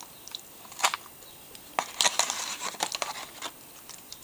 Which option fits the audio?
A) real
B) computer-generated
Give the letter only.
A